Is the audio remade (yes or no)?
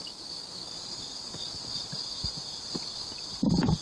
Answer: no